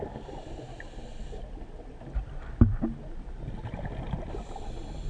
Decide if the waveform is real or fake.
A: real